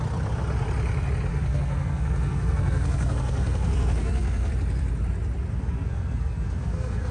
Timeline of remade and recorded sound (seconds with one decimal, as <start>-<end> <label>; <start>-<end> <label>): 0.0-1.3 recorded; 1.3-4.5 remade; 4.5-5.6 recorded; 5.6-7.1 remade